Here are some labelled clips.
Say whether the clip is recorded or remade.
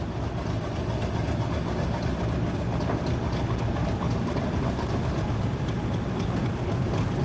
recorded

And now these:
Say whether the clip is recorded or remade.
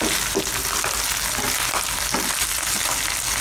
recorded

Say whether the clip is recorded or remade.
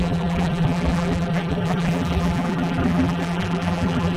remade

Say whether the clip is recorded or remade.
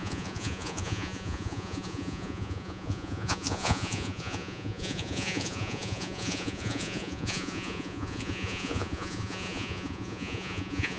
remade